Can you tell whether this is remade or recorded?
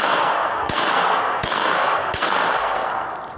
remade